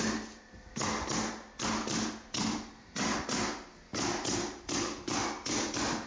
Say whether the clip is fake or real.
real